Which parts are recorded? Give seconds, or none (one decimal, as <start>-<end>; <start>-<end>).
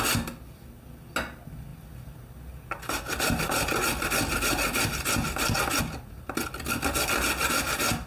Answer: 0.0-8.1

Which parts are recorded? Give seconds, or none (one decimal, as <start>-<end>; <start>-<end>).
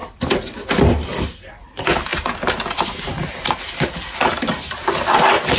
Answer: 2.1-3.5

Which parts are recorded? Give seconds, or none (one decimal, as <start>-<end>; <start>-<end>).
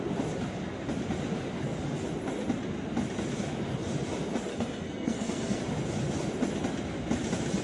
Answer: 0.0-4.5; 5.6-7.6